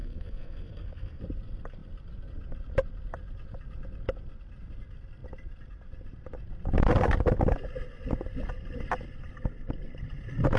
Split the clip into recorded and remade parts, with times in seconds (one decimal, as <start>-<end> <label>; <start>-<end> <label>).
0.0-1.2 remade; 1.2-10.6 recorded